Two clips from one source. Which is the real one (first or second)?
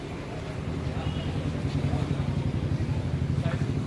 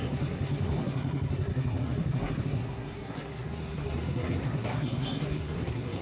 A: first